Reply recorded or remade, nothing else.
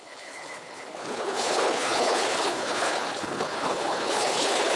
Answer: remade